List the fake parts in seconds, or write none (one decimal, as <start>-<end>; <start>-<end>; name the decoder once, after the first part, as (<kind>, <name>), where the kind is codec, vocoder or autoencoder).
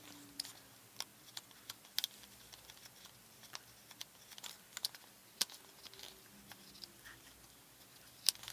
none